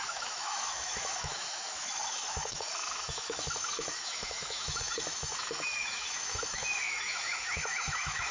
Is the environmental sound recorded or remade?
remade